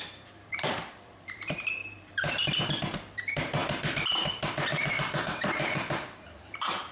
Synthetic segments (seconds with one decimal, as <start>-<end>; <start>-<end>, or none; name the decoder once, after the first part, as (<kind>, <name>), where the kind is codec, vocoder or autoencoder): 0.0-6.9 (vocoder, BigVGAN v2)